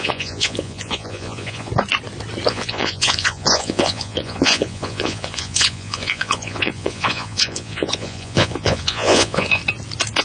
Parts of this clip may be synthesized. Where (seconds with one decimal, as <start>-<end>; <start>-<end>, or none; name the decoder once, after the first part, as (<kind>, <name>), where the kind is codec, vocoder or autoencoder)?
0.0-1.7 (vocoder, Vocos); 2.5-9.6